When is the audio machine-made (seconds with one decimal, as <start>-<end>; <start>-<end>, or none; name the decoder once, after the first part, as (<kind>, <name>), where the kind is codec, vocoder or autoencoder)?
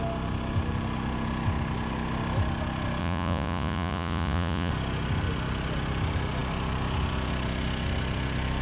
3.0-4.7 (vocoder, Vocos)